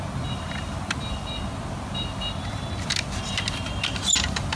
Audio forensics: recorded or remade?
recorded